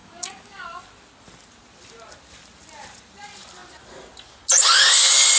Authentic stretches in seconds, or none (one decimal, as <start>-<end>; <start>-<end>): 0.8-5.4